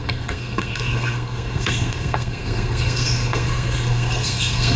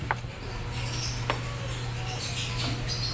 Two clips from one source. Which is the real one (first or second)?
second